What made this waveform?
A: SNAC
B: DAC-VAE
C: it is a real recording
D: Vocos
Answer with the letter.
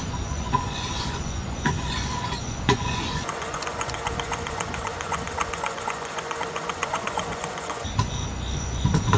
D